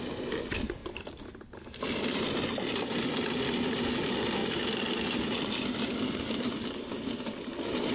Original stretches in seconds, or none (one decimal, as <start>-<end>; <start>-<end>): 0.0-7.9